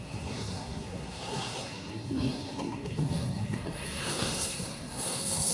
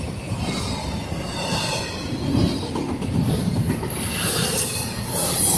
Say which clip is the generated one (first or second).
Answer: first